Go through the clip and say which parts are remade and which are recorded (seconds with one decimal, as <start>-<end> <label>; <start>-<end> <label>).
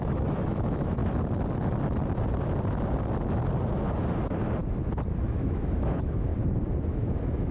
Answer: 0.0-1.0 remade; 1.0-5.3 recorded; 5.3-6.3 remade; 6.3-6.9 recorded; 6.9-7.5 remade